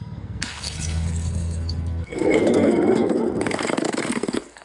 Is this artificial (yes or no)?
yes